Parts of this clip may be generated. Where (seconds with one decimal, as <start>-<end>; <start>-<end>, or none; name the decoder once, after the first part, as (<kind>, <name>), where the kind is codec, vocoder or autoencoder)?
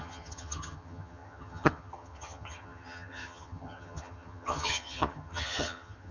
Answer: 0.0-6.1 (vocoder, HiFi-GAN)